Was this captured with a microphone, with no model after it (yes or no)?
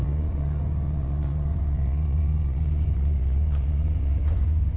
no